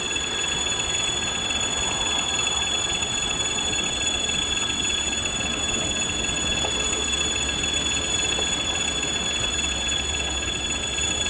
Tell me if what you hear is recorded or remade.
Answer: remade